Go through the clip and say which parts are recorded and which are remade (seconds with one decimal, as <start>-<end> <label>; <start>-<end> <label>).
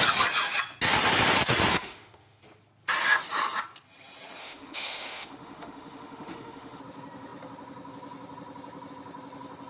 0.0-1.7 recorded; 1.7-2.4 remade; 2.4-4.4 recorded; 4.4-6.8 remade; 6.8-9.7 recorded